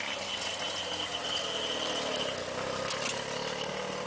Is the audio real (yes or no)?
yes